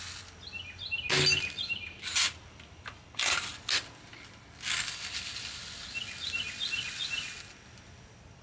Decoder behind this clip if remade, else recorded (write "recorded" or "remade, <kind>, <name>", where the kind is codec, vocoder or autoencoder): recorded